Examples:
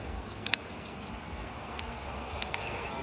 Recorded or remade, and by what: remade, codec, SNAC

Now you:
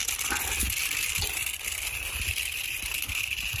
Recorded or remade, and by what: remade, vocoder, BigVGAN v2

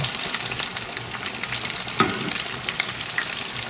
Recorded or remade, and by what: remade, vocoder, BigVGAN v2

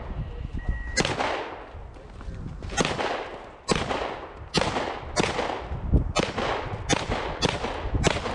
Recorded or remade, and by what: recorded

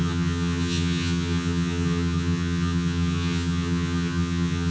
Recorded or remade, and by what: remade, vocoder, HiFi-GAN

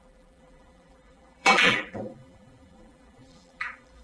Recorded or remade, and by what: remade, vocoder, BigVGAN v2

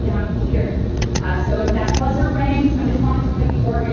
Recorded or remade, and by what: remade, vocoder, Vocos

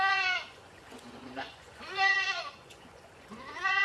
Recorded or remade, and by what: remade, vocoder, Vocos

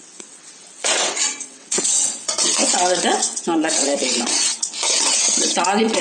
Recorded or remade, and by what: remade, vocoder, WaveNeXt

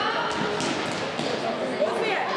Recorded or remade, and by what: recorded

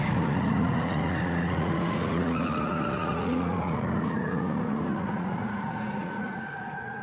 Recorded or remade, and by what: remade, vocoder, Vocos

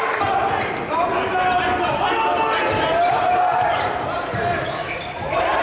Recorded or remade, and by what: recorded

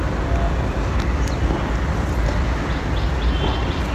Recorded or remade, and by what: recorded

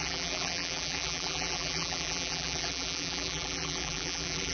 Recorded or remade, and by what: remade, vocoder, BigVGAN v2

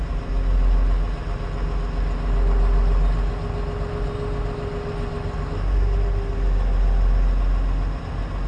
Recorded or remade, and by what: recorded